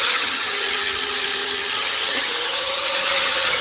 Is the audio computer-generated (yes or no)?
yes